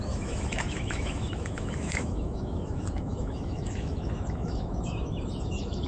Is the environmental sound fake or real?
fake